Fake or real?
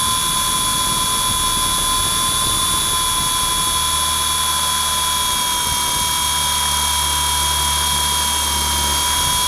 real